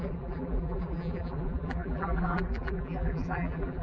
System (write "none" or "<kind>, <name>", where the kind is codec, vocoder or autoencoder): vocoder, BigVGAN v2